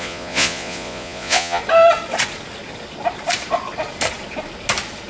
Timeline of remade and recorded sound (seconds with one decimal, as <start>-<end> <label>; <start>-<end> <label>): 0.0-1.6 remade; 1.6-5.1 recorded